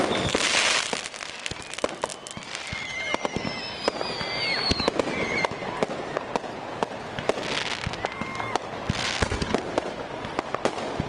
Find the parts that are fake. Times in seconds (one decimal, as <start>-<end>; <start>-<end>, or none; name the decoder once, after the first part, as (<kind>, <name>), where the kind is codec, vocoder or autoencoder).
none